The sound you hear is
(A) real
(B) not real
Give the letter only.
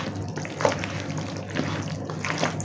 A